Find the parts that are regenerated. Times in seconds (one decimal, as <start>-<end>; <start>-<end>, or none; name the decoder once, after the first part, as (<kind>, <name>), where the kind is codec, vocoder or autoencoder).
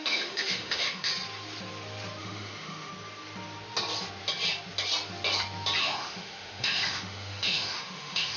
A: 0.0-1.1 (autoencoder, DAC-VAE); 2.2-2.9; 5.8-8.4